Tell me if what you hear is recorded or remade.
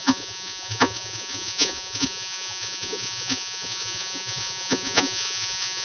remade